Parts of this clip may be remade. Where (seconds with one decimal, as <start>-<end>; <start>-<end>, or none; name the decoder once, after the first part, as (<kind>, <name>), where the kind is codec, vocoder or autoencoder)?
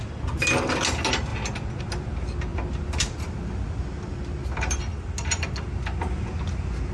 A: 2.5-4.8 (vocoder, BigVGAN v2)